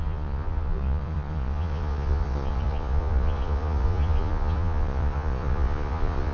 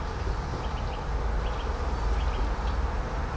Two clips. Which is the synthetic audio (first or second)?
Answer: first